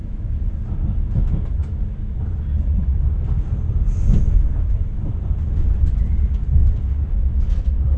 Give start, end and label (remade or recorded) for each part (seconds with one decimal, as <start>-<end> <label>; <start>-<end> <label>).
0.0-8.0 recorded